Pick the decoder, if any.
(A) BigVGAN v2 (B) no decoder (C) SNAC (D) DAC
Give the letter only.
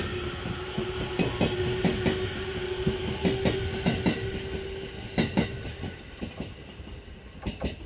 B